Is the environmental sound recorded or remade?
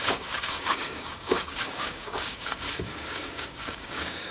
remade